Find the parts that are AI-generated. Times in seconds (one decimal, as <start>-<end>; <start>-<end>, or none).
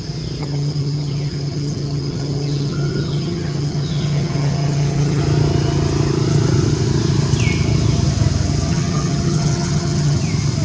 0.4-5.2; 8.7-10.2